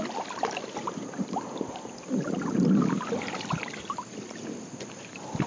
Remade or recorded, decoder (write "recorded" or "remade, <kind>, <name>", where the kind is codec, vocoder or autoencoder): recorded